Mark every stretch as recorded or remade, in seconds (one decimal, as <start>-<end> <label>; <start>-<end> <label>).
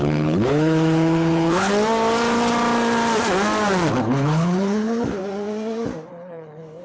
0.0-1.7 remade; 1.7-4.0 recorded; 4.0-5.2 remade; 5.2-6.1 recorded; 6.1-6.8 remade